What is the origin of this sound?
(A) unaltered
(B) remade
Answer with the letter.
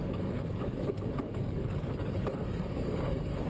B